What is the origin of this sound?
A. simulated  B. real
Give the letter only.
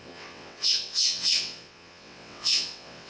A